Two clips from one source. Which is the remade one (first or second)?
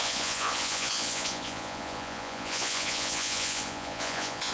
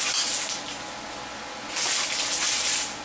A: first